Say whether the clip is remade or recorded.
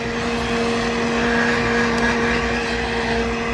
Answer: recorded